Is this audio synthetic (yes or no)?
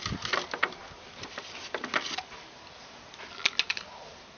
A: no